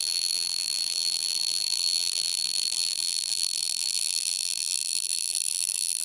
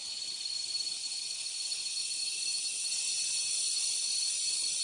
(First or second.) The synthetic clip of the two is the first